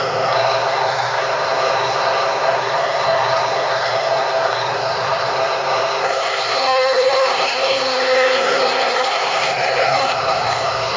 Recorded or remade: remade